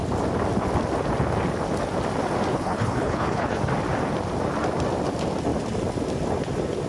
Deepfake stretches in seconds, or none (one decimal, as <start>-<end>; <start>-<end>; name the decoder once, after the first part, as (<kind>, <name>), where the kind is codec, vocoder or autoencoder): 2.5-3.6 (codec, HILCodec)